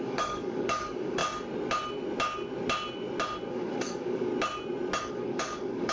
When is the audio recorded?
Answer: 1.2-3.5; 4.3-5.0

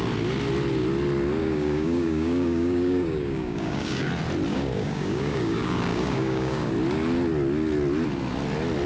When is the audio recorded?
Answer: 0.0-1.4; 4.1-4.5; 6.7-8.9

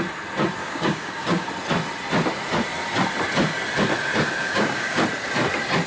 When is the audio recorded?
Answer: 0.0-0.6; 1.5-4.4; 5.0-5.9

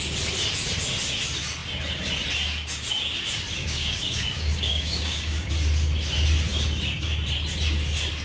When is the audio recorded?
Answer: 0.0-3.6; 5.5-8.2

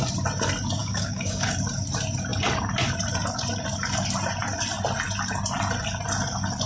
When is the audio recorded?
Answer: 0.0-0.8; 1.5-6.7

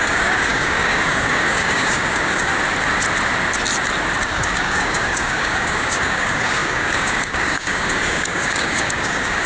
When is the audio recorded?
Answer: 2.5-4.2

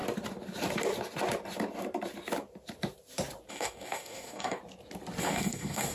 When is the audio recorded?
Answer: 0.0-3.5; 4.6-5.2